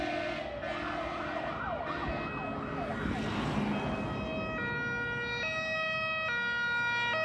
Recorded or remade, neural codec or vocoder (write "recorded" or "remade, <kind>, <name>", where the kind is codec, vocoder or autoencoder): recorded